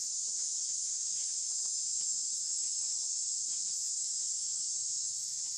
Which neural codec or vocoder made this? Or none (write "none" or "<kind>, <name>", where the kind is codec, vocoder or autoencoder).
autoencoder, DAC-VAE